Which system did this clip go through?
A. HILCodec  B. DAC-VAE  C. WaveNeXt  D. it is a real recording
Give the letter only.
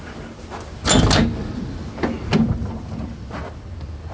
D